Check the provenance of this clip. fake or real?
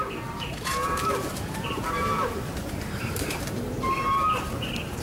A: fake